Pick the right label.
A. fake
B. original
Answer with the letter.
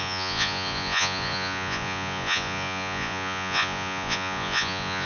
A